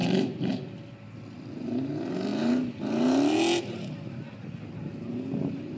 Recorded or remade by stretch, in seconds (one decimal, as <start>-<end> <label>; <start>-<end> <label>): 0.0-0.5 remade; 0.5-5.8 recorded